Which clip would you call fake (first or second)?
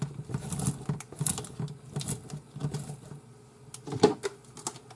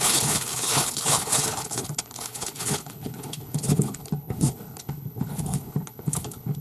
second